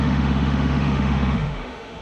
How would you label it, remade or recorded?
remade